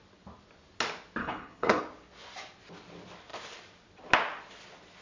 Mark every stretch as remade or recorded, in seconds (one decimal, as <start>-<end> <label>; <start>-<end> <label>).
0.0-1.2 recorded; 1.2-1.8 remade; 1.8-5.0 recorded